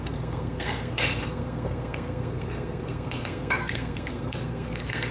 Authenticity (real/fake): fake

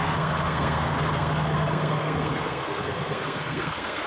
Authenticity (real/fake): fake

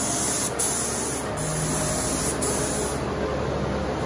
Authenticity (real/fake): real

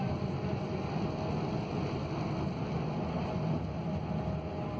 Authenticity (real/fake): real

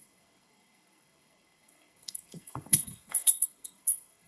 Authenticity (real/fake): fake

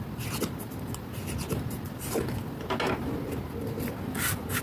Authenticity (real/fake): real